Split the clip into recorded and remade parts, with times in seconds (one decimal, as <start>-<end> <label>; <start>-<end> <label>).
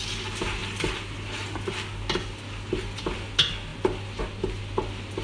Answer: 0.0-5.2 recorded